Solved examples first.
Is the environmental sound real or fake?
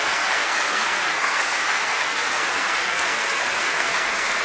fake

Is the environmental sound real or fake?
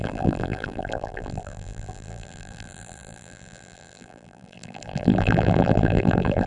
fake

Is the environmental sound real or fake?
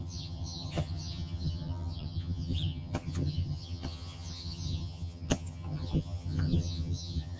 fake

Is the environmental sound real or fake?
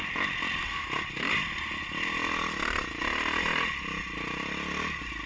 real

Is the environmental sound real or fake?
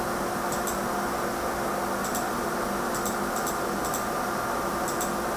real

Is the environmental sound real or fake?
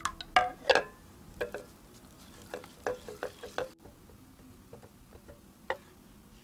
real